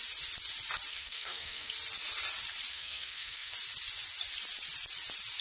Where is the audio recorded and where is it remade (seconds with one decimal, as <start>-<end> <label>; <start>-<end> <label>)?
0.0-0.9 recorded; 0.9-1.7 remade; 1.7-2.7 recorded; 2.7-3.5 remade; 3.5-5.4 recorded

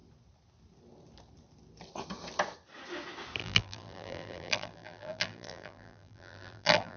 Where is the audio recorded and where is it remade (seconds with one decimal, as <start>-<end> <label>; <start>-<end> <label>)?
0.0-3.4 recorded; 3.4-7.0 remade

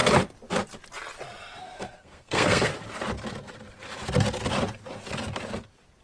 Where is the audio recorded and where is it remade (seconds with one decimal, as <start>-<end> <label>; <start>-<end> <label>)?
0.0-1.6 recorded; 1.6-2.7 remade; 2.7-6.0 recorded

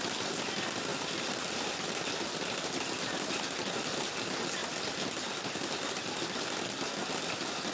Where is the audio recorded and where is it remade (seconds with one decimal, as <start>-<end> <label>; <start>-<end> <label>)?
0.0-7.7 recorded